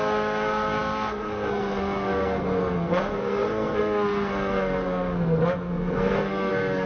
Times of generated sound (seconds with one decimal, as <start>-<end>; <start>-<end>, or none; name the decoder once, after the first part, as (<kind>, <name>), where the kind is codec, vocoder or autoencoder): 0.0-6.9 (codec, SNAC)